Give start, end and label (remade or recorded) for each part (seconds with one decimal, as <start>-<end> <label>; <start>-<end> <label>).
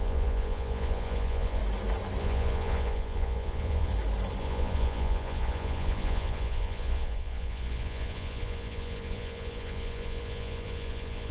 0.0-1.6 remade; 1.6-2.2 recorded; 2.2-3.9 remade; 3.9-4.4 recorded; 4.4-11.3 remade